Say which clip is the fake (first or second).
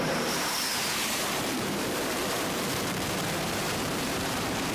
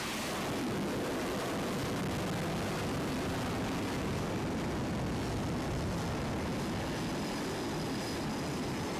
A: first